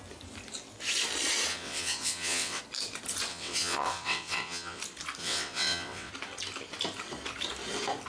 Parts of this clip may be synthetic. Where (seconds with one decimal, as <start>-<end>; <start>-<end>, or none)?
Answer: 1.5-2.6; 3.3-4.8; 5.2-6.1